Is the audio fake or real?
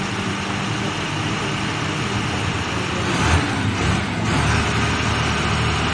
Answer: real